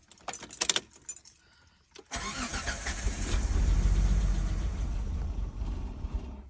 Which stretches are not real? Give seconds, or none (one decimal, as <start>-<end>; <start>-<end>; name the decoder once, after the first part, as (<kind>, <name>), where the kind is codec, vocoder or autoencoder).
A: none